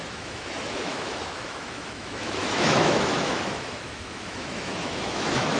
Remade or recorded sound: remade